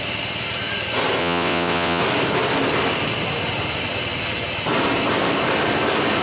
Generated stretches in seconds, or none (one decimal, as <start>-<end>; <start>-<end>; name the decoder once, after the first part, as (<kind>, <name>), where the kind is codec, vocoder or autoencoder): 1.2-2.0 (vocoder, WaveNeXt)